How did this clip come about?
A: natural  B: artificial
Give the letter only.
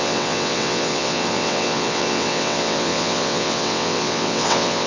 B